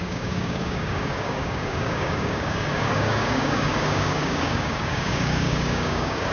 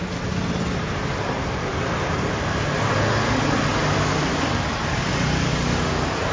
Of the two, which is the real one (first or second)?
second